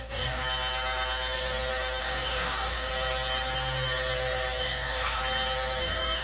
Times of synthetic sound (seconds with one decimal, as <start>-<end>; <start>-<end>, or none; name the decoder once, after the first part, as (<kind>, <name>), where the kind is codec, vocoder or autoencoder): 0.0-0.4 (codec, DAC); 2.0-2.9; 4.6-5.2; 5.8-6.2